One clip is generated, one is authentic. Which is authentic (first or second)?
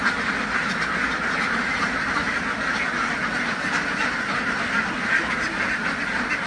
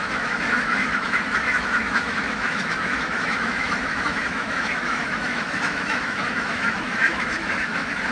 first